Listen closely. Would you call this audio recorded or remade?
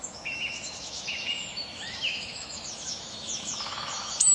remade